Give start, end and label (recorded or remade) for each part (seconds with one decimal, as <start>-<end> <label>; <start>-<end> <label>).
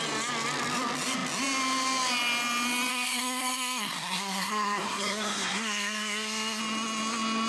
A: 0.0-2.9 recorded; 2.9-6.6 remade; 6.6-7.5 recorded